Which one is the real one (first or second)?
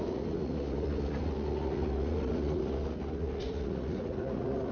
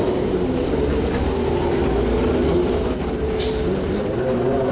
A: second